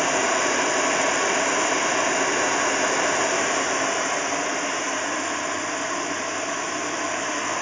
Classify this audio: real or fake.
real